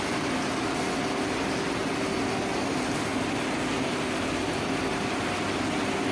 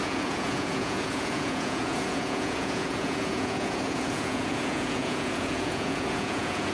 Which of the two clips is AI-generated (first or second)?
second